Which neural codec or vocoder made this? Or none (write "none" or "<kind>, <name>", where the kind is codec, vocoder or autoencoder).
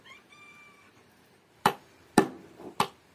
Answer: vocoder, BigVGAN v2